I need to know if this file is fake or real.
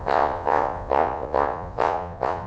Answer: fake